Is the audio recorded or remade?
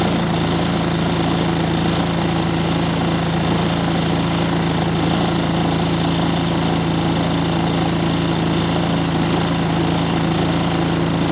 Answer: recorded